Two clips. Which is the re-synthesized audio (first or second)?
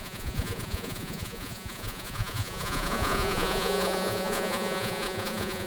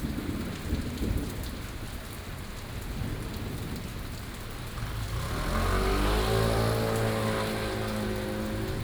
first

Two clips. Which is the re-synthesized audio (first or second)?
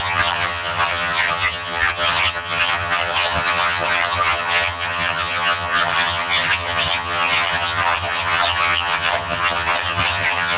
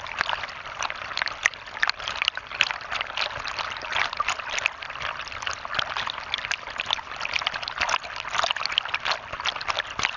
first